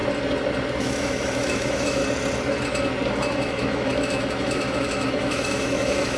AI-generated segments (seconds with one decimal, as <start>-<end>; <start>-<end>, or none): 0.8-2.0; 3.3-6.2